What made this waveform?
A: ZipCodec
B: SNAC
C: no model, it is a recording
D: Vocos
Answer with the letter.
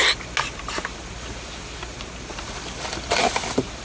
C